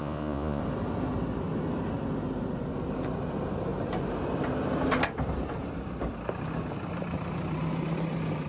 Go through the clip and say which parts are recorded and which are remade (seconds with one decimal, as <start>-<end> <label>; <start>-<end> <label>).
0.0-0.6 remade; 0.6-8.5 recorded